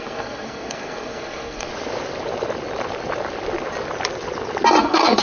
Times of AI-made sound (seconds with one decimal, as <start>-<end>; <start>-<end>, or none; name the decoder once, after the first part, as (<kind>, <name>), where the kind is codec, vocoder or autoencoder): 0.0-1.7 (codec, SNAC); 4.8-5.2